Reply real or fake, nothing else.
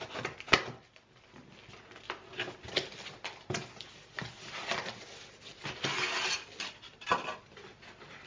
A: real